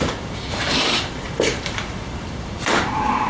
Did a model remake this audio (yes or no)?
yes